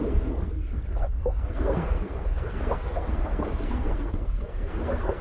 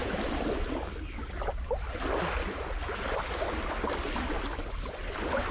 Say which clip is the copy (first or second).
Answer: first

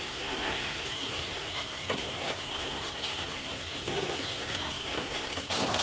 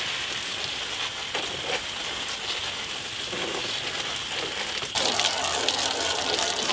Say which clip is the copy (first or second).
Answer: first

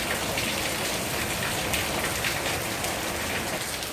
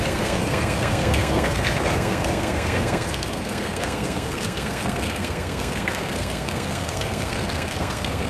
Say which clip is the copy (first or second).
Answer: second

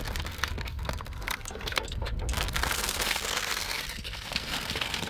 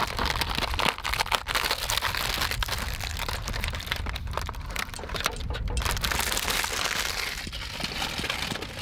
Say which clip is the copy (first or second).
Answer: first